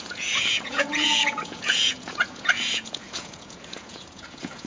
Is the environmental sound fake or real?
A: fake